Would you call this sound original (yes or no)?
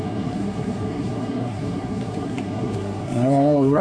no